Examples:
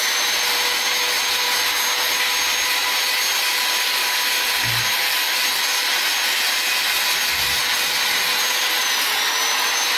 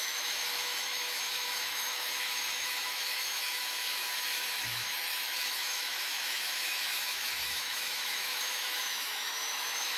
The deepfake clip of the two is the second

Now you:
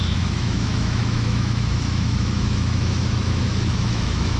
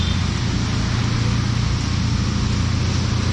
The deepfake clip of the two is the first